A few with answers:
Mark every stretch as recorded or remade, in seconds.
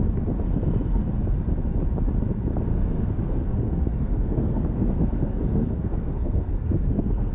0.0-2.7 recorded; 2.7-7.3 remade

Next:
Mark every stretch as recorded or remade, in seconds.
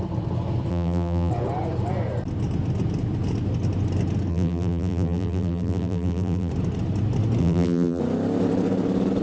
0.0-0.7 recorded; 0.7-1.3 remade; 1.3-4.3 recorded; 4.3-6.5 remade; 6.5-7.4 recorded; 7.4-8.0 remade; 8.0-9.2 recorded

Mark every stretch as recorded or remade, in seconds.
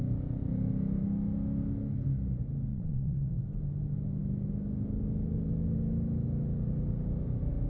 0.0-2.7 recorded; 2.7-3.3 remade; 3.3-7.7 recorded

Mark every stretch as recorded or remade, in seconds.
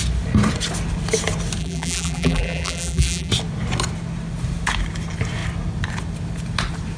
0.0-1.6 recorded; 1.6-3.3 remade; 3.3-7.0 recorded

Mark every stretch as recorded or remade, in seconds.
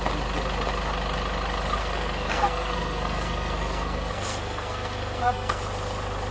0.0-1.8 recorded; 1.8-5.6 remade; 5.6-6.3 recorded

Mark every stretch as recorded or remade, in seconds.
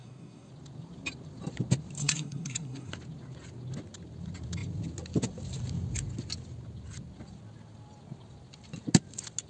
0.0-0.5 remade; 0.5-2.0 recorded; 2.0-2.9 remade; 2.9-9.5 recorded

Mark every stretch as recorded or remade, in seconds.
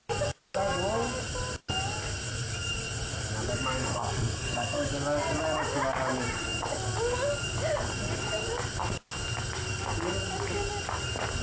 0.0-3.7 recorded; 3.7-4.9 remade; 4.9-11.4 recorded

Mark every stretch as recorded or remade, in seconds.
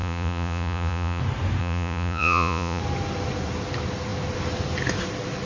0.0-1.2 remade; 1.2-1.6 recorded; 1.6-2.8 remade; 2.8-5.5 recorded